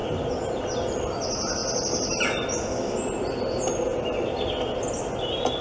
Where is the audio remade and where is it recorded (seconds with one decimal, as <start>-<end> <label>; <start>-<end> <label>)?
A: 0.0-5.6 recorded